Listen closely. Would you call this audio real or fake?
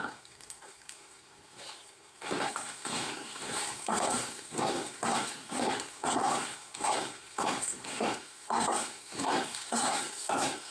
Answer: fake